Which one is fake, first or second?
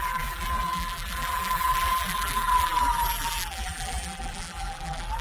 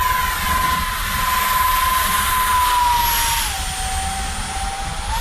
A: first